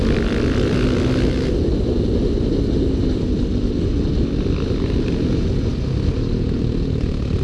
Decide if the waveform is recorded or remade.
recorded